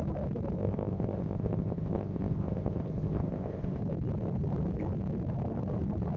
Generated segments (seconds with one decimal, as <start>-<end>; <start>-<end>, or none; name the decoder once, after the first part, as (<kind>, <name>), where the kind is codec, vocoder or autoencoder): 0.6-3.8 (codec, ZipCodec)